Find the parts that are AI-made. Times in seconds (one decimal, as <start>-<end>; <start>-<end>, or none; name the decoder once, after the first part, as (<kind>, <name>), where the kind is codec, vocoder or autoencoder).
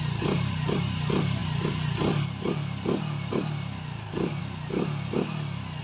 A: none